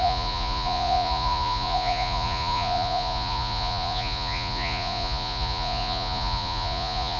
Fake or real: fake